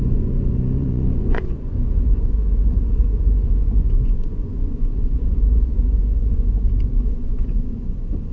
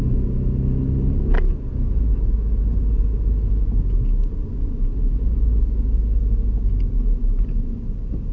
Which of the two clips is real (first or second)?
second